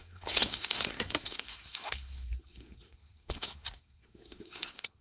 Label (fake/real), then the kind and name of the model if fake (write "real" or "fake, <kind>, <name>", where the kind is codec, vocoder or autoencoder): fake, codec, SNAC